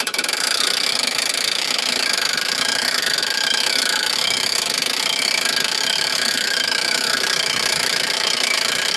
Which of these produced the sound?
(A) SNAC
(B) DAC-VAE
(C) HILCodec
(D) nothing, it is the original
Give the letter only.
B